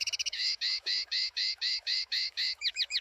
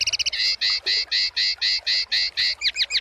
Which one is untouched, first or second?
second